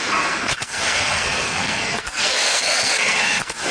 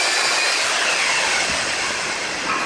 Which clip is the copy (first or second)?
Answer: first